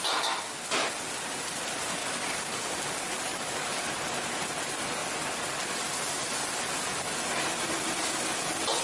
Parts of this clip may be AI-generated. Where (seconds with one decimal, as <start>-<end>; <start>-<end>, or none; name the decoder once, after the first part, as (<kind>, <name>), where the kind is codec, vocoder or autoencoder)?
2.0-2.8 (codec, DAC); 3.3-3.9